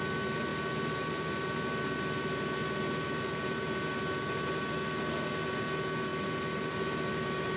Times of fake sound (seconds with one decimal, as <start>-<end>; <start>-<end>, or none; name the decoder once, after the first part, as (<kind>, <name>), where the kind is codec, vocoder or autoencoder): none